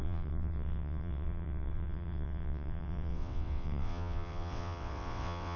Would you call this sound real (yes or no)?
no